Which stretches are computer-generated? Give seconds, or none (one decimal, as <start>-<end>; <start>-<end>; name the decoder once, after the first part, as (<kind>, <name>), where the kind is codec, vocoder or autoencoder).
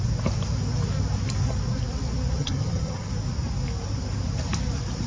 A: 2.4-3.1 (vocoder, HiFi-GAN)